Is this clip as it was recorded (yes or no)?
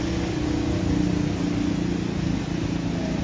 yes